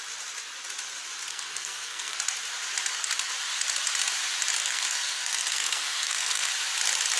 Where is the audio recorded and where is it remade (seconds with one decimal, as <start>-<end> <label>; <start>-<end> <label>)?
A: 0.0-1.3 recorded; 1.3-2.2 remade; 2.2-4.6 recorded; 4.6-6.5 remade; 6.5-7.2 recorded